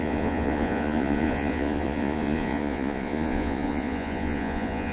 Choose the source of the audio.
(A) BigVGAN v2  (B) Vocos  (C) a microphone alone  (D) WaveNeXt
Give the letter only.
B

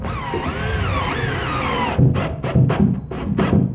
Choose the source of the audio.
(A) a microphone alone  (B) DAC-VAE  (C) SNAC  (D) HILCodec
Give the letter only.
A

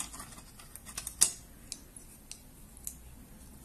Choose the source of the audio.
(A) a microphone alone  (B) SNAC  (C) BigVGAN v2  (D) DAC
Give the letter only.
A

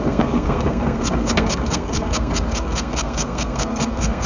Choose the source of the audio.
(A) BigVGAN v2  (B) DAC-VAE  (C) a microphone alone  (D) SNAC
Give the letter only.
D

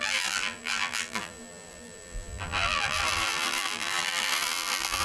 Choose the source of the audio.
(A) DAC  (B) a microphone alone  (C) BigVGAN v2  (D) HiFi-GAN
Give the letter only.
C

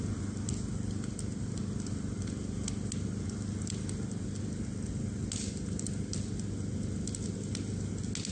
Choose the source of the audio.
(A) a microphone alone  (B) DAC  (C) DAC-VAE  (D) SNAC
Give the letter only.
A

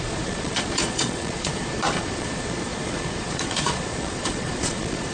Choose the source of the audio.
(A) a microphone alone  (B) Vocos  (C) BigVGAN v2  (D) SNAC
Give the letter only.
B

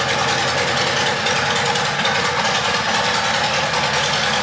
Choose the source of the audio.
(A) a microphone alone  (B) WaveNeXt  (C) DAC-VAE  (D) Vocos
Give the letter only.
A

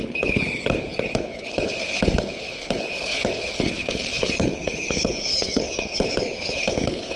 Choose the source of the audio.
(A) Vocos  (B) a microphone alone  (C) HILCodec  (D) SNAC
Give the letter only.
C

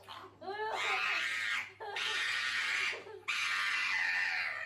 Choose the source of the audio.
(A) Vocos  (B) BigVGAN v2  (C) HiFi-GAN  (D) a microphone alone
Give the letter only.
D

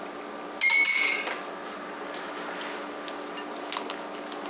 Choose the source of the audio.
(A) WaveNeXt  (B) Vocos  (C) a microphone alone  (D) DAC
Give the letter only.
C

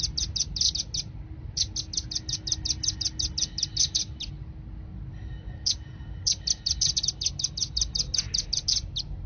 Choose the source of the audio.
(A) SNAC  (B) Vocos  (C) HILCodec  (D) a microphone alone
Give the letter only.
D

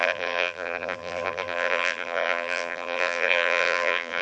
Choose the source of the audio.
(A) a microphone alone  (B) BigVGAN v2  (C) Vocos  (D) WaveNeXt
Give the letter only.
B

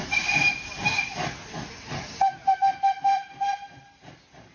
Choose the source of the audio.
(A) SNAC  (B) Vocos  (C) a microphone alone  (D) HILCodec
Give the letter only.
C